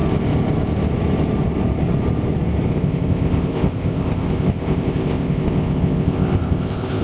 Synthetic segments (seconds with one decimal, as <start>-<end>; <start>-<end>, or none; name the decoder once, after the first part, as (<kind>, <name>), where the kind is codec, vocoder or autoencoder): 2.7-7.0 (codec, ZipCodec)

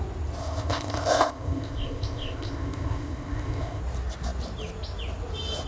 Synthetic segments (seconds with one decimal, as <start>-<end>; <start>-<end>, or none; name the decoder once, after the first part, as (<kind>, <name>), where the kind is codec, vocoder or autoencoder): 0.4-3.8 (codec, ZipCodec)

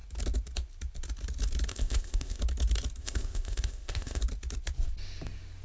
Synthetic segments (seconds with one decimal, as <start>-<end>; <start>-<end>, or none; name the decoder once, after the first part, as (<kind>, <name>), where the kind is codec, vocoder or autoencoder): 1.7-2.4 (codec, ZipCodec); 3.0-4.2

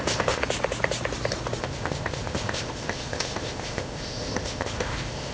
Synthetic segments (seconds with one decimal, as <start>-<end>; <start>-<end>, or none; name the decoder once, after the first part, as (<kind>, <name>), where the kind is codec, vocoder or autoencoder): 0.0-0.4 (codec, ZipCodec); 1.6-5.3

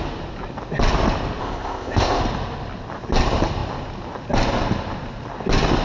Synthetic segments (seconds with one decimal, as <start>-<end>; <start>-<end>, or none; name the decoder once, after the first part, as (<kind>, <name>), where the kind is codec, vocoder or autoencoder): 1.4-2.2 (codec, ZipCodec)

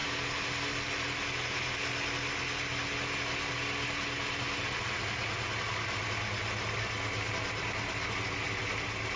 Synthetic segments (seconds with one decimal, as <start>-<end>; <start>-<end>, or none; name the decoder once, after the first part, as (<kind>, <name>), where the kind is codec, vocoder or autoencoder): none

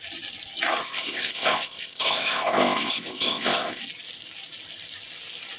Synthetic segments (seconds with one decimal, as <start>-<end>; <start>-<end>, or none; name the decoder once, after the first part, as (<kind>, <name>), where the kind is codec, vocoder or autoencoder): 0.8-3.8 (codec, ZipCodec)